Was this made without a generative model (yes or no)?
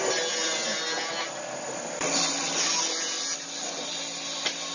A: yes